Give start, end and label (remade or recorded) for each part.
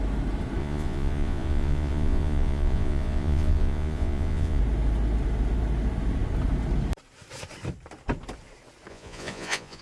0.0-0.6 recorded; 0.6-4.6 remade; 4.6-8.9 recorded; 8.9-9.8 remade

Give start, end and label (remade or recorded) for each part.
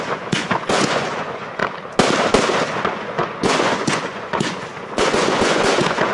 0.0-1.6 remade; 1.6-2.7 recorded; 2.7-6.1 remade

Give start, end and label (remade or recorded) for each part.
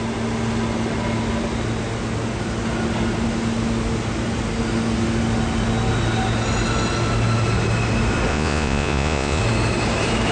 0.0-8.3 recorded; 8.3-9.4 remade; 9.4-10.3 recorded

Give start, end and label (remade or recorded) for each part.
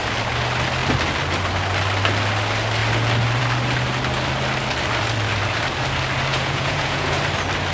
0.0-6.3 recorded; 6.3-7.2 remade; 7.2-7.7 recorded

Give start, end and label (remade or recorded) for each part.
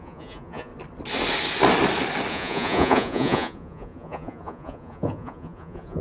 0.0-0.7 remade; 0.7-2.3 recorded; 2.3-6.0 remade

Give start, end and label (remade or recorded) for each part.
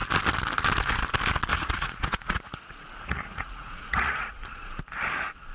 0.0-1.5 recorded; 1.5-4.8 remade; 4.8-5.5 recorded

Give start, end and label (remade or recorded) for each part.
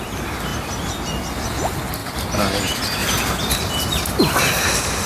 0.0-5.1 recorded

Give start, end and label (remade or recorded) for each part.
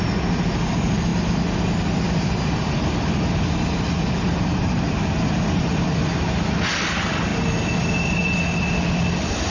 0.0-9.5 recorded